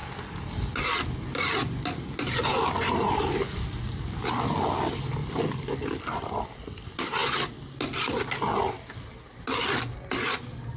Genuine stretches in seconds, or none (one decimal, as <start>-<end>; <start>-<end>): 0.0-10.8